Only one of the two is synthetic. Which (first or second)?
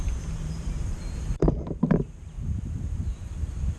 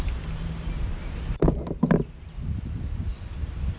first